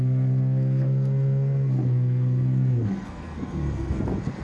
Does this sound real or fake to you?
fake